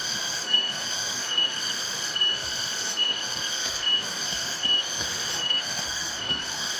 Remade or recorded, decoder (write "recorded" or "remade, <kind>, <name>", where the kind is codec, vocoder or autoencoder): remade, codec, SNAC